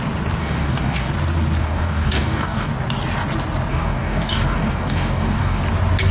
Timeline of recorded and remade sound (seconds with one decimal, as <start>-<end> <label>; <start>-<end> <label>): 0.0-0.4 recorded; 0.4-1.1 remade; 1.1-1.6 recorded; 1.6-2.7 remade; 2.7-3.7 recorded; 3.7-5.6 remade; 5.6-6.1 recorded